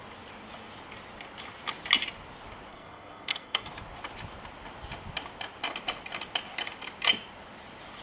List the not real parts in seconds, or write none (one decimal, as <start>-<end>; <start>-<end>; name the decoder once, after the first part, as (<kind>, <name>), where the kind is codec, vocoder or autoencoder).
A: 2.7-3.7 (codec, SNAC)